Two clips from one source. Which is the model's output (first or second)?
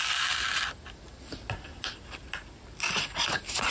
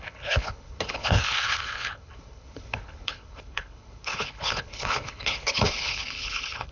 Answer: second